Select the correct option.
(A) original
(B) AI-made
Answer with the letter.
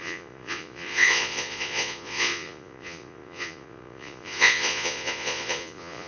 B